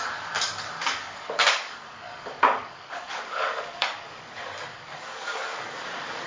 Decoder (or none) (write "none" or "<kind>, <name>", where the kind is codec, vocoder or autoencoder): codec, DAC